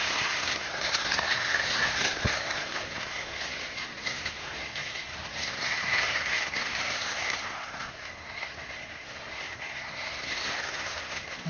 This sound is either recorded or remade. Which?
remade